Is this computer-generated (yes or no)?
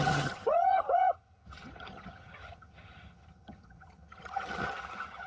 yes